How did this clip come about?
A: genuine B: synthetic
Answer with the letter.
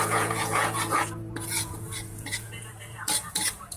B